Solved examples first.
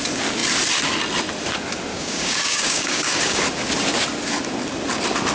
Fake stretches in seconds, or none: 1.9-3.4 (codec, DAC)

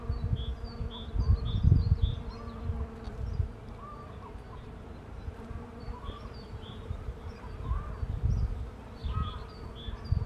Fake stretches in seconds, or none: 3.1-8.0 (vocoder, BigVGAN v2)

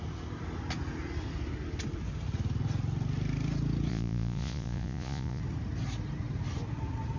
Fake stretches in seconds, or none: 3.9-5.4 (vocoder, Vocos)

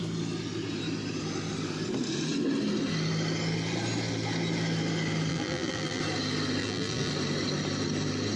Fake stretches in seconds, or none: 5.3-6.0 (vocoder, BigVGAN v2); 6.6-7.1

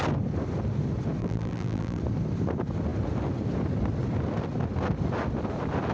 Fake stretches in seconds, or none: 1.2-2.0 (vocoder, BigVGAN v2)

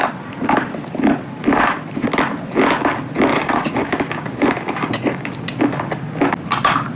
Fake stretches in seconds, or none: 3.3-5.4 (codec, DAC)

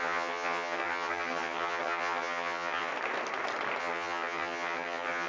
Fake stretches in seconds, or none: 0.0-2.9 (vocoder, HiFi-GAN); 3.8-5.3

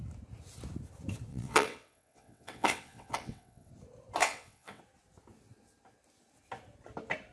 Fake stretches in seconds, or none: 1.3-3.7 (vocoder, WaveNeXt); 4.2-4.8